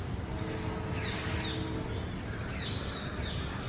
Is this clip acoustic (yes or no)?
yes